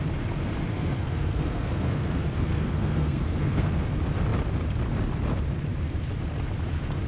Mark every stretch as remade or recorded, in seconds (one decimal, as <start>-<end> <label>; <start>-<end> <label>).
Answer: 0.0-0.7 recorded; 0.7-3.8 remade; 3.8-7.1 recorded